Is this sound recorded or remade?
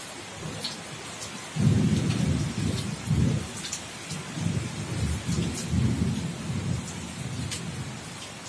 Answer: recorded